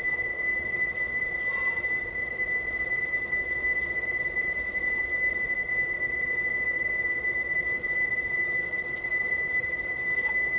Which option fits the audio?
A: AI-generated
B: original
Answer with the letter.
A